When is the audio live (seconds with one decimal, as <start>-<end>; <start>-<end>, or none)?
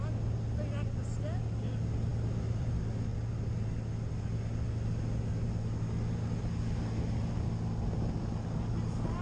0.0-2.1; 2.7-9.2